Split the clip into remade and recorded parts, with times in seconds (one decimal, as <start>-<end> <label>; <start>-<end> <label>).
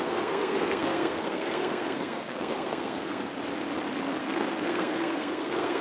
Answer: 0.0-3.3 remade; 3.3-4.2 recorded; 4.2-5.8 remade